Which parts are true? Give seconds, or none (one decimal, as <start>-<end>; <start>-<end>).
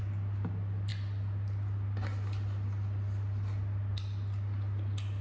0.0-5.2